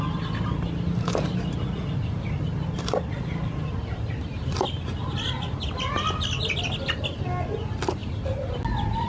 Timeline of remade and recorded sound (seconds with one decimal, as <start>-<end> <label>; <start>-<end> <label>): 0.0-9.1 recorded